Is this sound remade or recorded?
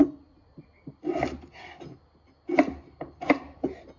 recorded